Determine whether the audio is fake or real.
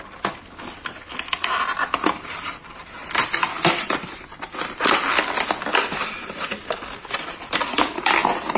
real